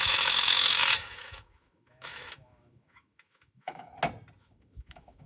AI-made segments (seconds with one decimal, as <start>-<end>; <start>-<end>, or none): 0.0-3.9; 4.4-5.3